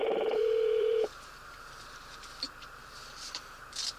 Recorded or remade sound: remade